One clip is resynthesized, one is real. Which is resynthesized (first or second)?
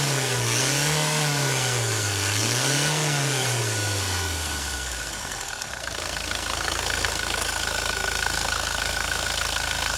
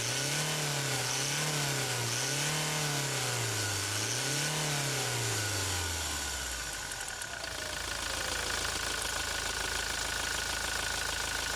first